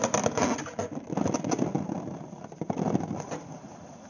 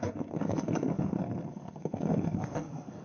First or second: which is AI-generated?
second